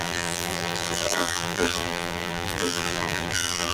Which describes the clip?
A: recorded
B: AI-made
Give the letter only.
B